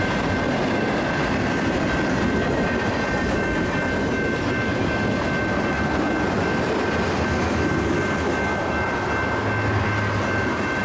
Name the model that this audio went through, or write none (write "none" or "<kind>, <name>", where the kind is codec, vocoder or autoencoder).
none